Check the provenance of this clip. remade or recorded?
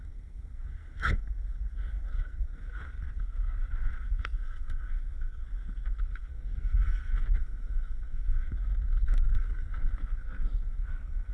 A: remade